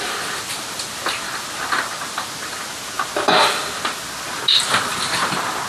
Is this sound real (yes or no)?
yes